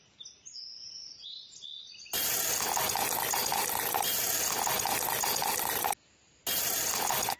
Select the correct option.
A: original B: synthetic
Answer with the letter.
A